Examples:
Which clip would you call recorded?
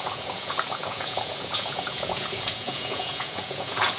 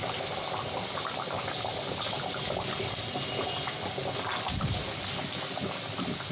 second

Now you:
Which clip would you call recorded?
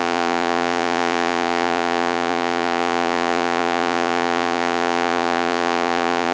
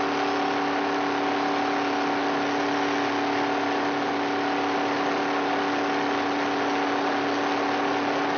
second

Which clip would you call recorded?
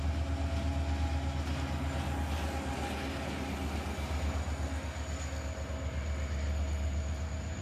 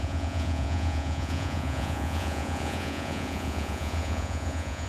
first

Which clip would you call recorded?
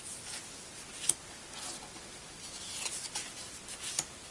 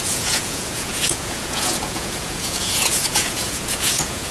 first